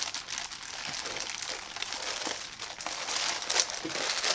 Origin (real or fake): real